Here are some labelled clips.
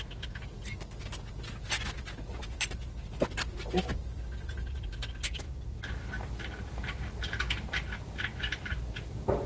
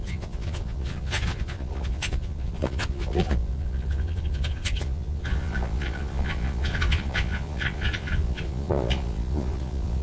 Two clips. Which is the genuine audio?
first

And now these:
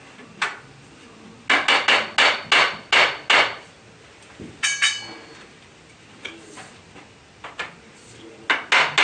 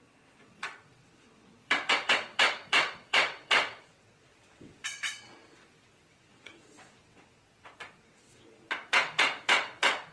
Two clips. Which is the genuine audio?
first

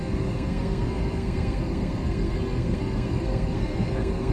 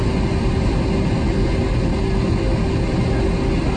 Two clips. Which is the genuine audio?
second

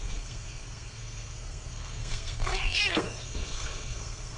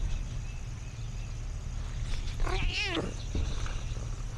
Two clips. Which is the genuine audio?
second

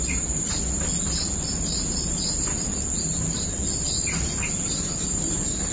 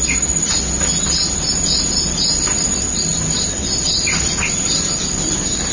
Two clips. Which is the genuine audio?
second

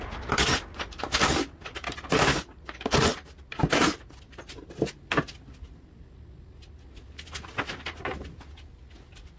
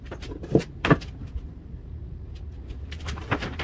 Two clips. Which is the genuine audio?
first